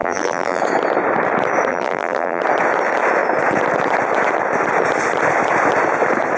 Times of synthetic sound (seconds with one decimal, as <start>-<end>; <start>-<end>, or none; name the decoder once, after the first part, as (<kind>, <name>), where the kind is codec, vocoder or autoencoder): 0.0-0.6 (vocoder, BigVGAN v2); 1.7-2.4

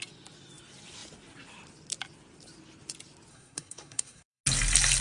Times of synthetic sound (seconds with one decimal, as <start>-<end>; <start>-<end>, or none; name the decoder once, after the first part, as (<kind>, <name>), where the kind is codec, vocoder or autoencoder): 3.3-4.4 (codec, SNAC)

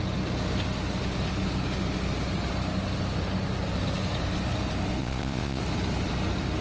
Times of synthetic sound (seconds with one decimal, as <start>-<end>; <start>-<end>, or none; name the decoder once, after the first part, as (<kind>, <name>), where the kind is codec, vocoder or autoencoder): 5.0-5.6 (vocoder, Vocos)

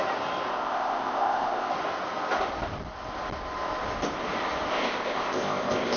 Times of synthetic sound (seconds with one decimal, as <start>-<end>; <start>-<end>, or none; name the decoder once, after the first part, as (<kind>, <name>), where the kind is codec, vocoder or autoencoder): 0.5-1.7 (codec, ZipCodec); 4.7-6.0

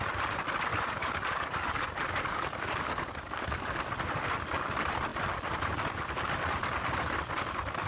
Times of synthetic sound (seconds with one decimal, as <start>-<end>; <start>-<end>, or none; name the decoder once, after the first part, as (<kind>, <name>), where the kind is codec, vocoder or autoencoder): 0.7-3.8 (codec, DAC)

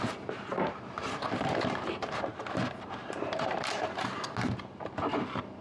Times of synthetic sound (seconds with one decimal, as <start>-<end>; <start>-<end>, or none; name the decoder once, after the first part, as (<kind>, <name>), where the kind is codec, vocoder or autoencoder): 0.5-2.4 (vocoder, BigVGAN v2); 3.0-3.9

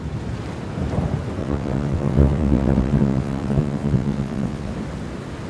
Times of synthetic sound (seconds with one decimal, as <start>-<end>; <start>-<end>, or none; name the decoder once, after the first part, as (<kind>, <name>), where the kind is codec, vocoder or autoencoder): 1.4-4.7 (vocoder, WaveNeXt)